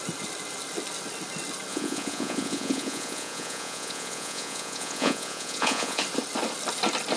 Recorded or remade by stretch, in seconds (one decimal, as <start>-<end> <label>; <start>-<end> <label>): 0.0-1.7 recorded; 1.7-6.0 remade; 6.0-7.2 recorded